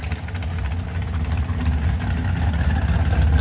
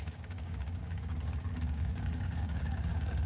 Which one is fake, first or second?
second